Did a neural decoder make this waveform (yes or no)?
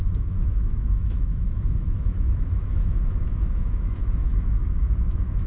yes